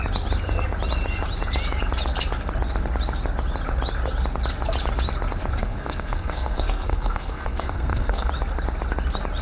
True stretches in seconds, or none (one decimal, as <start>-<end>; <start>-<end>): 0.0-5.6; 8.3-9.4